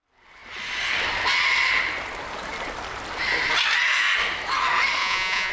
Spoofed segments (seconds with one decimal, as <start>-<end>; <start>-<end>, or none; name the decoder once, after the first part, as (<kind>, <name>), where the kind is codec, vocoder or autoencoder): 5.0-5.5 (vocoder, Vocos)